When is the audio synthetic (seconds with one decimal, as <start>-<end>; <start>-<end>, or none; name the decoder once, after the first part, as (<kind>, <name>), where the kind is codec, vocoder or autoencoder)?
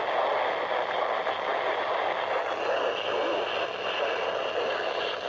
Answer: none